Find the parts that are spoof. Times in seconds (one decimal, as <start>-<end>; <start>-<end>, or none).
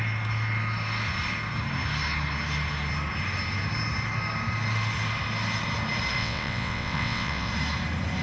6.2-7.5